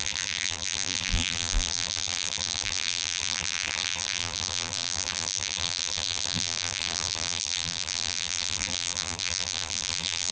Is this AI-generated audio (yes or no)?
yes